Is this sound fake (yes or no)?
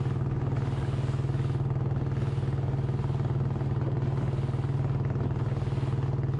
no